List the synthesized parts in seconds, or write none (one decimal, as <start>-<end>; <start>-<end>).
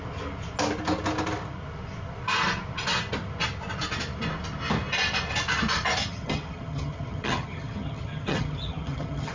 6.0-9.3